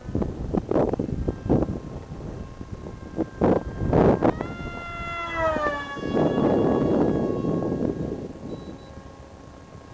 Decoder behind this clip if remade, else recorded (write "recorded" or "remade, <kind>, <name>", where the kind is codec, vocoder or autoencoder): recorded